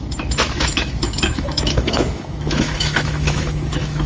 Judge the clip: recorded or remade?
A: remade